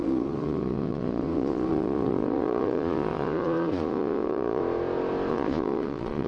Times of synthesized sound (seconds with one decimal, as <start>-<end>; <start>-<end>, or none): 0.0-4.6; 5.3-6.3